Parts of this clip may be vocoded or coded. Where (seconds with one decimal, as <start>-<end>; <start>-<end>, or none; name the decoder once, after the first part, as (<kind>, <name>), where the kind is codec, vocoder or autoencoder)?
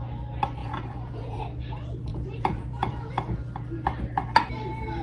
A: 0.6-1.4 (vocoder, Vocos); 2.1-3.1